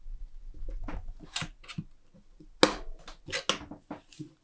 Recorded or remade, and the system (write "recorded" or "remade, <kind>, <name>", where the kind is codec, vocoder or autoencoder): recorded